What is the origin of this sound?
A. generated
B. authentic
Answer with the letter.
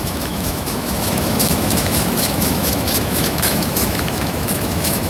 A